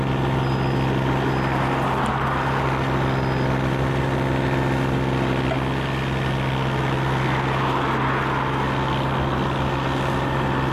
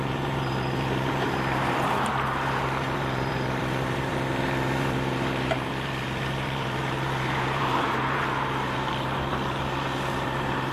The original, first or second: first